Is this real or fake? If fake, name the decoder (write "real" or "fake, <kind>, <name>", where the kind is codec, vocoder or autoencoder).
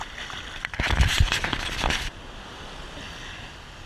real